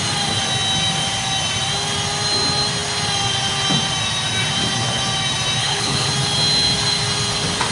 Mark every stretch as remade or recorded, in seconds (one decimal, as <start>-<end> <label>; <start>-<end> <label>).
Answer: 0.0-5.6 recorded; 5.6-6.1 remade; 6.1-7.7 recorded